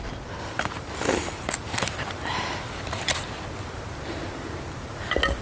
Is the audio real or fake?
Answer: real